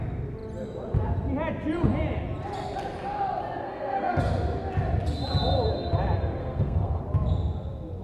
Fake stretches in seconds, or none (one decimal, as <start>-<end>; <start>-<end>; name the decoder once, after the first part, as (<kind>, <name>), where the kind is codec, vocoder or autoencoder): 3.6-4.2 (codec, SNAC); 6.4-7.0